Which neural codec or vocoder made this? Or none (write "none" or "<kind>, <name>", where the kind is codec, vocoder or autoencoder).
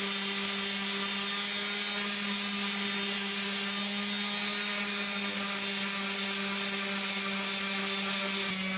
none